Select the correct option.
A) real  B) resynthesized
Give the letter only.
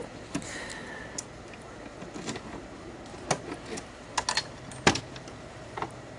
A